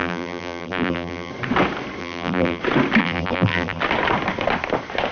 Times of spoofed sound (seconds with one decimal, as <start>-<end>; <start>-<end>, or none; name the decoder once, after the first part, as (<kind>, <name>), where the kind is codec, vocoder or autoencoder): 0.0-1.3 (vocoder, BigVGAN v2); 2.0-2.6; 3.0-3.8